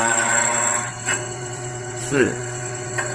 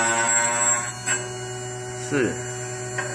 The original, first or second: second